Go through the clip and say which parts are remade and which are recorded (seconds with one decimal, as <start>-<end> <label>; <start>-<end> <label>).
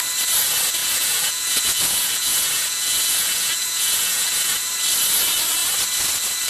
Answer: 0.0-0.8 recorded; 0.8-4.7 remade; 4.7-6.5 recorded